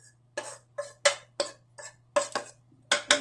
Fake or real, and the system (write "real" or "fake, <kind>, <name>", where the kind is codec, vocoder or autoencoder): real